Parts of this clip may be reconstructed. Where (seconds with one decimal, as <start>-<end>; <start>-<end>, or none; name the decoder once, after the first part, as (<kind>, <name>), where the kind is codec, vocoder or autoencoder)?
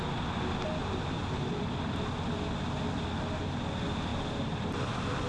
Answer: 0.8-1.5 (vocoder, BigVGAN v2); 4.1-4.8